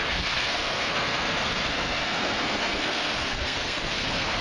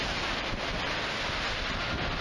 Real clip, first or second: second